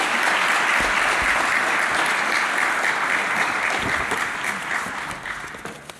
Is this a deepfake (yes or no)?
no